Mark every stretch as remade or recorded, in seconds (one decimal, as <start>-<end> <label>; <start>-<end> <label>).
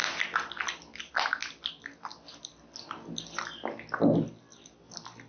0.0-5.3 recorded